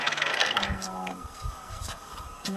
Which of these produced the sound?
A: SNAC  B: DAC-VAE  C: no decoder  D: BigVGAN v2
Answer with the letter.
A